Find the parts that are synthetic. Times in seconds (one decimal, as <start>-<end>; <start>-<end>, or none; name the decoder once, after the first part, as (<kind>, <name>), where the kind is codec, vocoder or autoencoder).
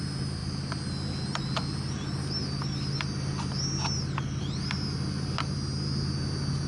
none